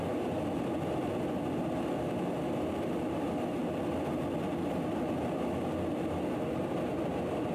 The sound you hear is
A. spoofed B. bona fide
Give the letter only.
B